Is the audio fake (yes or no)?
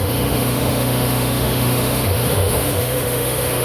yes